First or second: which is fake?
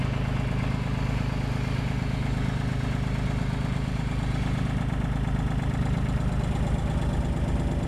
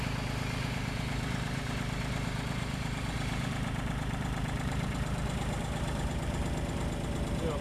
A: second